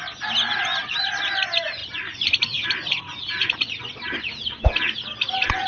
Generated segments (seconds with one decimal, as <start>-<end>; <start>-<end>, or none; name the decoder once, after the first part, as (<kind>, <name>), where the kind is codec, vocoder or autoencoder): 1.8-3.0 (vocoder, BigVGAN v2)